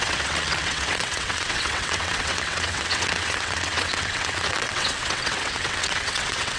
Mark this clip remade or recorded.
remade